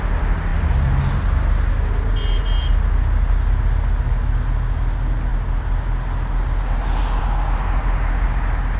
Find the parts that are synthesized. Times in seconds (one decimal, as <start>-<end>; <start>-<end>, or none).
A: none